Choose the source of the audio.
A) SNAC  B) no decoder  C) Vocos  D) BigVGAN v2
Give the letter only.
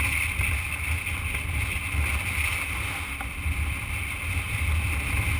B